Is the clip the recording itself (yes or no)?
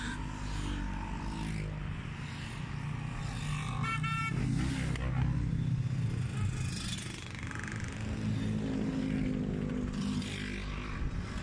yes